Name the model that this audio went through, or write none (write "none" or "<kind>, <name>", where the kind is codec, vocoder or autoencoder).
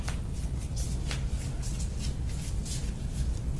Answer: none